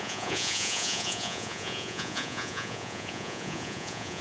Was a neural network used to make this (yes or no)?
yes